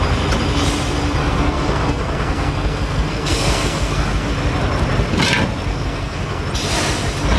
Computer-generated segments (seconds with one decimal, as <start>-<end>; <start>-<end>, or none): 1.2-4.3; 5.7-6.4